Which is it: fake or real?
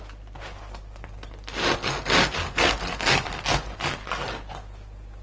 real